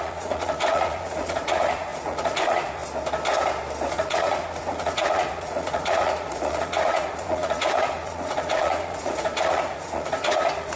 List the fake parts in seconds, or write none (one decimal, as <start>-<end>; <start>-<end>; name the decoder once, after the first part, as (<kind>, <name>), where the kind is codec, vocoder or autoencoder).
0.0-2.8 (vocoder, Vocos); 3.9-10.8